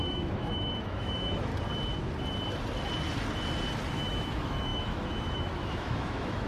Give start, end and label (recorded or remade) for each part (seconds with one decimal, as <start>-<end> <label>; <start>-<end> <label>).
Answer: 0.0-1.5 remade; 1.5-3.9 recorded; 3.9-6.5 remade

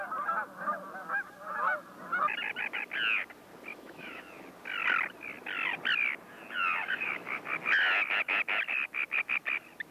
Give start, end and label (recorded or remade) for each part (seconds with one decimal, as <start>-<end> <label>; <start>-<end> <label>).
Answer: 0.0-3.7 recorded; 3.7-4.2 remade; 4.2-6.8 recorded; 6.8-7.4 remade; 7.4-9.9 recorded

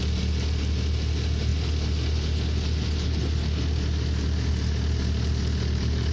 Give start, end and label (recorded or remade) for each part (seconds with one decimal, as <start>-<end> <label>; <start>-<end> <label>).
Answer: 0.0-6.1 recorded

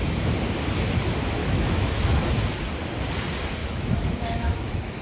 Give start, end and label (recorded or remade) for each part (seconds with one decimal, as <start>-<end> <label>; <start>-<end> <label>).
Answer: 0.0-1.4 recorded; 1.4-2.3 remade; 2.3-3.6 recorded; 3.6-5.0 remade

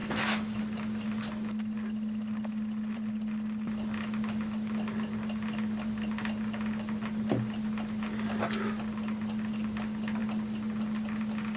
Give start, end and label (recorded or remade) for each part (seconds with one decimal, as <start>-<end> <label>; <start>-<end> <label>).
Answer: 0.0-0.6 remade; 0.6-11.6 recorded

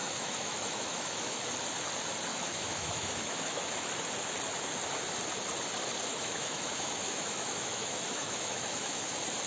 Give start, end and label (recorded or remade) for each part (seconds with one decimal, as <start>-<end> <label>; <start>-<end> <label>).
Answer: 0.0-1.4 remade; 1.4-2.3 recorded; 2.3-3.9 remade; 3.9-6.1 recorded; 6.1-9.1 remade; 9.1-9.5 recorded

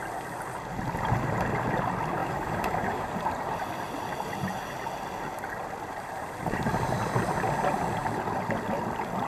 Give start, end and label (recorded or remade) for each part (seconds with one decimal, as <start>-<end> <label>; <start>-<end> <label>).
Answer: 0.0-2.2 recorded; 2.2-3.1 remade; 3.1-9.3 recorded